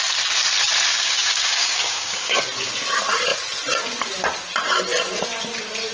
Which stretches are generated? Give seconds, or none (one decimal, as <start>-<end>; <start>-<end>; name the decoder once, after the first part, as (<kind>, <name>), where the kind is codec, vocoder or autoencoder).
0.9-2.4 (codec, DAC)

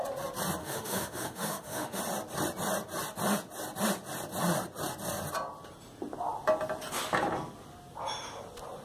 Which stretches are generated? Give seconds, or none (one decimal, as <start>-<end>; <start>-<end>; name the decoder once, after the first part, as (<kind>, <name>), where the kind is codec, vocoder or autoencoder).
0.6-2.0 (autoencoder, DAC-VAE)

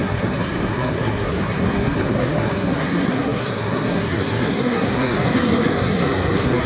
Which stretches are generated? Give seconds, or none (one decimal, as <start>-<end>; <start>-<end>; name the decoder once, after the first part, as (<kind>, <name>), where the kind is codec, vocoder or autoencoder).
0.0-6.7 (codec, SNAC)

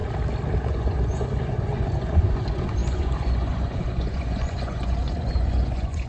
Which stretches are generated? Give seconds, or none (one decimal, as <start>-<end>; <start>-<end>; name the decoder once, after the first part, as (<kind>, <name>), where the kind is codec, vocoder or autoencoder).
0.7-6.1 (vocoder, Vocos)

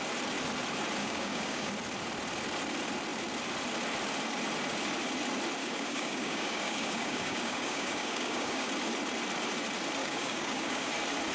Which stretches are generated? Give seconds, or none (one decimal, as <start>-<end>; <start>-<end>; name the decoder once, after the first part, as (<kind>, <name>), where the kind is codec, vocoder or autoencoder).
1.0-1.7 (codec, DAC); 5.6-8.7; 10.0-10.9